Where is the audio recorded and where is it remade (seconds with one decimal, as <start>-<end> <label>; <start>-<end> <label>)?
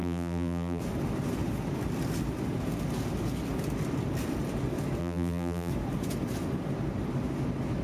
0.0-0.8 remade; 0.8-5.0 recorded; 5.0-5.7 remade; 5.7-7.8 recorded